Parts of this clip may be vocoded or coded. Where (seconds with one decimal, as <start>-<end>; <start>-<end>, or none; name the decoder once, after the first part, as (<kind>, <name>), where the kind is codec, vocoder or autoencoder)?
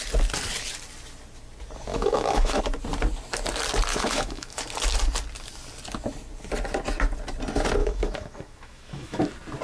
1.9-2.6 (autoencoder, DAC-VAE); 3.9-4.6; 7.8-9.2